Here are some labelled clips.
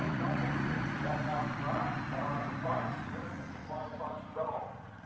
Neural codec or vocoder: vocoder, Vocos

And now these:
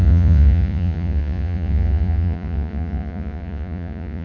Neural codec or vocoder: vocoder, Vocos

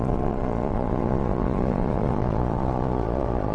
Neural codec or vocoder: vocoder, Vocos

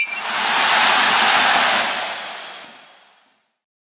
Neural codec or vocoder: none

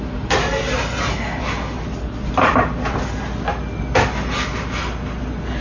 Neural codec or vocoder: none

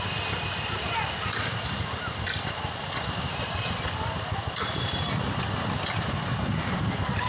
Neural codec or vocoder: none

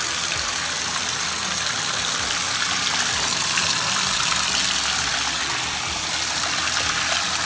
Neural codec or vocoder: none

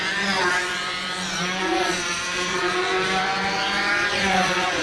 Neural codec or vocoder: vocoder, Vocos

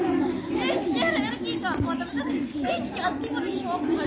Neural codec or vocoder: none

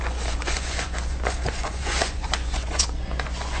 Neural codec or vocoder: vocoder, Vocos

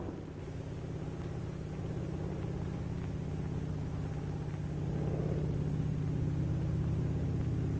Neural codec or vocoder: none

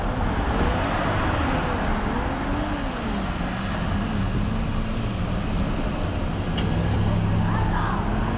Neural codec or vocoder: none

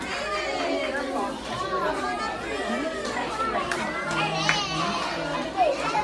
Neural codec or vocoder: none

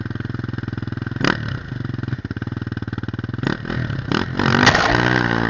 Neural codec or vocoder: none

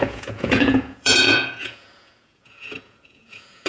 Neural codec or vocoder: vocoder, Vocos